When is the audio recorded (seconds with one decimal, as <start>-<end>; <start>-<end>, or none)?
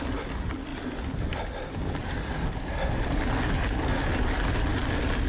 0.0-5.3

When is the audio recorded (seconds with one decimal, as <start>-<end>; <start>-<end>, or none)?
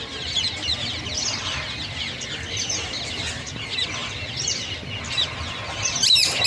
0.0-6.5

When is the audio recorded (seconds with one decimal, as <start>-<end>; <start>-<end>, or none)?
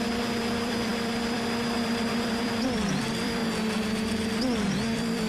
3.4-4.7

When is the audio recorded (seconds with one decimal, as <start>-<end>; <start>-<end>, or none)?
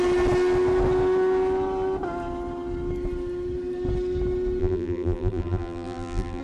0.0-4.6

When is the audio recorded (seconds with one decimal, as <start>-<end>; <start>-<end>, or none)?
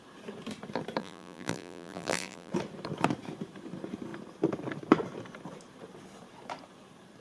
0.0-1.0; 2.5-7.2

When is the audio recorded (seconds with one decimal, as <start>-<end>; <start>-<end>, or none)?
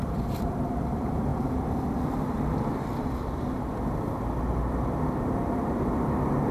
1.3-5.2